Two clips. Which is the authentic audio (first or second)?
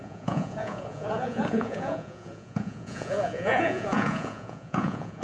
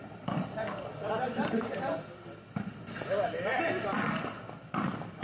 second